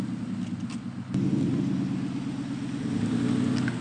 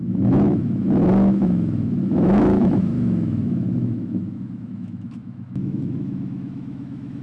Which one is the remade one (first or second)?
second